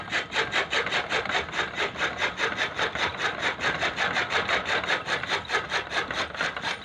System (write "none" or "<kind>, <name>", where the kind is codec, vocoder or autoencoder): none